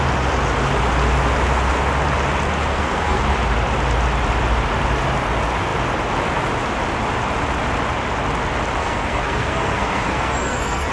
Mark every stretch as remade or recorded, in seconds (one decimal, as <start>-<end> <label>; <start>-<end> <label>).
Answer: 0.0-2.7 recorded; 2.7-3.2 remade; 3.2-8.8 recorded; 8.8-10.9 remade